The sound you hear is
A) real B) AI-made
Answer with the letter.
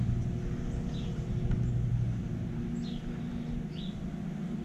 A